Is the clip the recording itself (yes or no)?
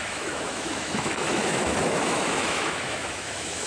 no